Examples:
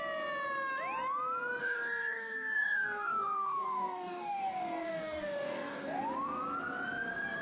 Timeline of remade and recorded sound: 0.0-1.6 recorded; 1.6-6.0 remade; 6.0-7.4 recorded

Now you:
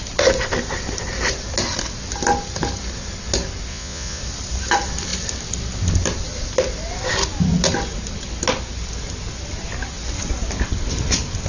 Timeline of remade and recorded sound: 0.0-3.7 recorded; 3.7-4.2 remade; 4.2-11.5 recorded

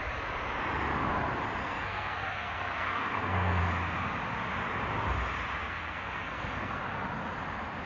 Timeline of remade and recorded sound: 0.0-1.6 recorded; 1.6-3.6 remade; 3.6-5.6 recorded; 5.6-6.8 remade; 6.8-7.9 recorded

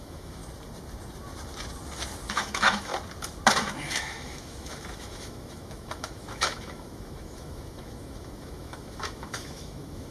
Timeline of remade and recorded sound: 0.0-0.4 remade; 0.4-2.3 recorded; 2.3-2.9 remade; 2.9-3.5 recorded; 3.5-10.1 remade

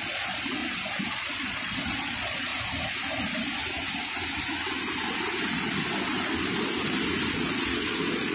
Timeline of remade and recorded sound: 0.0-0.6 remade; 0.6-1.1 recorded; 1.1-2.5 remade; 2.5-7.3 recorded; 7.3-8.3 remade